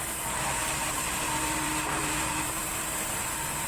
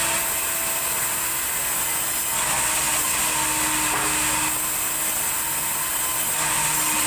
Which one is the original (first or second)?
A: second